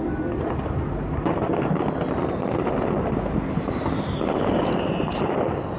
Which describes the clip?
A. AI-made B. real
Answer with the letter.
B